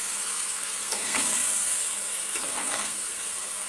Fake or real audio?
fake